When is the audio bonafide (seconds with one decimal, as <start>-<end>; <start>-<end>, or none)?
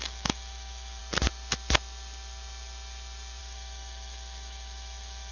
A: 1.0-3.4